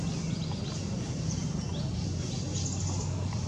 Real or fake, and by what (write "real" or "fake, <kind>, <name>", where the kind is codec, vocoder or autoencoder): fake, vocoder, BigVGAN v2